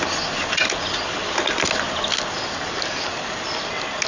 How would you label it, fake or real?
real